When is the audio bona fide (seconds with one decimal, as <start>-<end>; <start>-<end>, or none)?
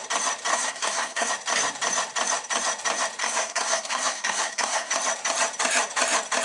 0.0-0.5; 1.3-3.2; 4.9-6.4